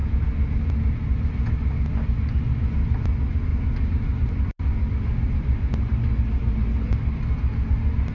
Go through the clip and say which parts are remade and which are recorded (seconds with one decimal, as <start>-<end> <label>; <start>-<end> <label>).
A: 0.0-8.1 recorded